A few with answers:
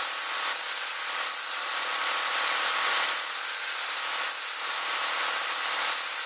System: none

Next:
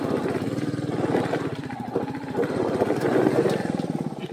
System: vocoder, BigVGAN v2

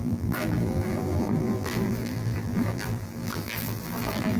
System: vocoder, BigVGAN v2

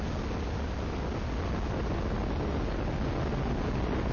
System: none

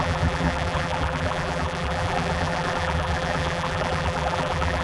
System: vocoder, BigVGAN v2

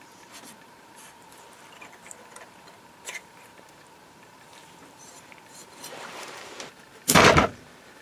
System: vocoder, BigVGAN v2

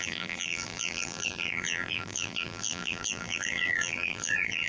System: vocoder, BigVGAN v2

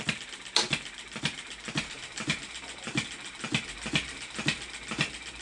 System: none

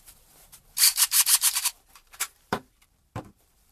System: vocoder, BigVGAN v2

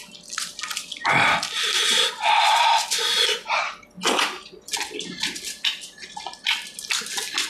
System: none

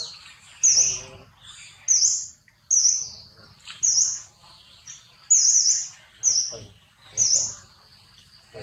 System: none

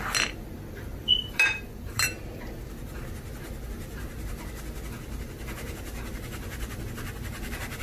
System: none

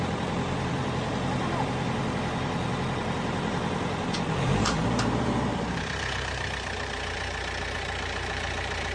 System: vocoder, BigVGAN v2